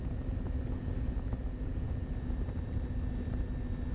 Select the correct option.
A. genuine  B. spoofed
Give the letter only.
A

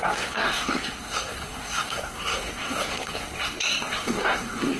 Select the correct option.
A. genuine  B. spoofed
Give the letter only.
B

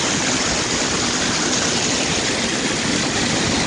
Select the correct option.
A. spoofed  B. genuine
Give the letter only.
B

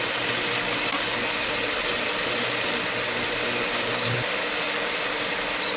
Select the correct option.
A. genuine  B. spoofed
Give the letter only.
A